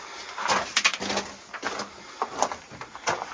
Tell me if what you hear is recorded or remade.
recorded